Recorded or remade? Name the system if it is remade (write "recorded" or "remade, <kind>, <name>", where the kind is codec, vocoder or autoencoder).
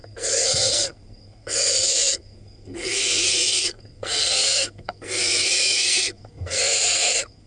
remade, codec, SNAC